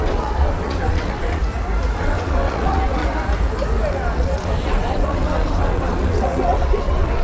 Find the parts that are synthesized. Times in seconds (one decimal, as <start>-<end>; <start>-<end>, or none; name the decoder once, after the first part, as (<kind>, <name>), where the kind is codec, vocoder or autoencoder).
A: 0.0-1.4 (vocoder, WaveNeXt); 2.0-3.0; 3.9-7.2